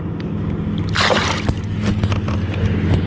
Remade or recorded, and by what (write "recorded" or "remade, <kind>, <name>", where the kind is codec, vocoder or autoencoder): recorded